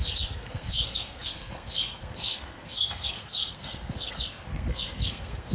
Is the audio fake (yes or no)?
yes